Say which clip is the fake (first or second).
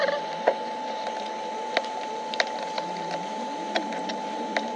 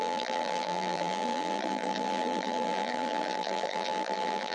second